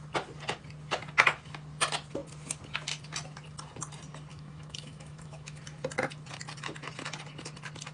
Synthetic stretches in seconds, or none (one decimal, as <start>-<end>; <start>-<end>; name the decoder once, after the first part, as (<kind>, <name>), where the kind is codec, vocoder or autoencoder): 4.3-5.6 (autoencoder, DAC-VAE)